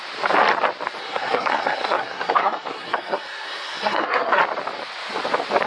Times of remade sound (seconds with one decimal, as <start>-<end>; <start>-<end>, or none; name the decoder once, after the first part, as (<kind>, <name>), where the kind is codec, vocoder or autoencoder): 1.0-4.4 (codec, SNAC)

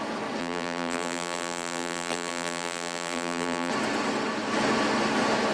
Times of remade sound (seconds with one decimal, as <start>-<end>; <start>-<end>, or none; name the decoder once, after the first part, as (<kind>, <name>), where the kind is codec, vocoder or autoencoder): 0.4-3.7 (vocoder, BigVGAN v2)

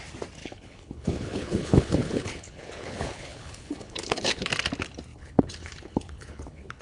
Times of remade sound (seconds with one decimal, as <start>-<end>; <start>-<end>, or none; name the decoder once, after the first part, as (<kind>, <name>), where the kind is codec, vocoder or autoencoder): 0.4-4.5 (codec, HILCodec); 5.1-6.8

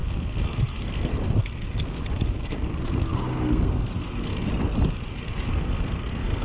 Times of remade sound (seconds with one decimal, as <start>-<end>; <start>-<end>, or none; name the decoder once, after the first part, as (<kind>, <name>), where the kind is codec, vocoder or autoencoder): 0.0-1.1 (codec, SNAC); 2.4-4.3; 5.5-6.4

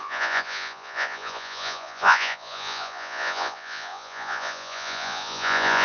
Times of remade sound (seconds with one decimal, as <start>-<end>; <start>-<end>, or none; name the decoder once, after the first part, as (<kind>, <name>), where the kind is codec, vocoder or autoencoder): 0.0-5.8 (vocoder, Vocos)

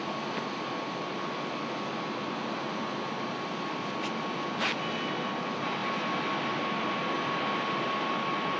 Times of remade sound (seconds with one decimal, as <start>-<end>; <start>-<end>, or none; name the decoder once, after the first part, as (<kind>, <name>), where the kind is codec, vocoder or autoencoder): none